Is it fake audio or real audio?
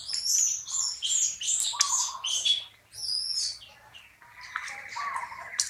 real